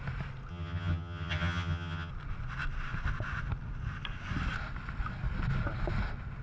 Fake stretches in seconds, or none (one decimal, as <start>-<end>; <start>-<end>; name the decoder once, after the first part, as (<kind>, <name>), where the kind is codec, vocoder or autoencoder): 0.5-2.1 (vocoder, HiFi-GAN)